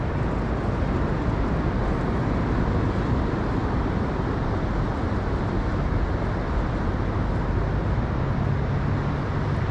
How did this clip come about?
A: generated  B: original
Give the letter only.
B